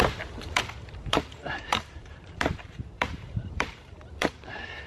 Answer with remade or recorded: remade